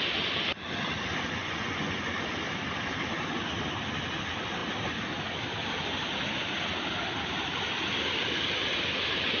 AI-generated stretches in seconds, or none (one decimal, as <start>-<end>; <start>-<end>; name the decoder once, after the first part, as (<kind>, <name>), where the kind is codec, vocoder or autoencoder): 1.4-2.0 (vocoder, Vocos)